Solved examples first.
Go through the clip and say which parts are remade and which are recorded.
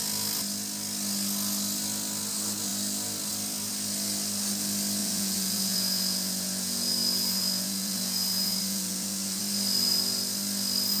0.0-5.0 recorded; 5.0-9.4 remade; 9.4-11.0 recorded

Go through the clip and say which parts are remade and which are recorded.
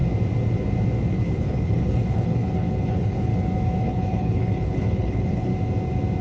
0.0-1.1 recorded; 1.1-3.3 remade; 3.3-3.8 recorded; 3.8-5.5 remade; 5.5-6.2 recorded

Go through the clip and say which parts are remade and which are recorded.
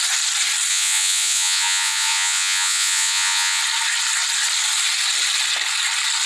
0.0-0.7 recorded; 0.7-3.6 remade; 3.6-6.3 recorded